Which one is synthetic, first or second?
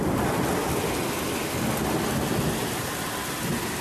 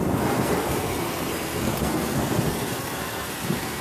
second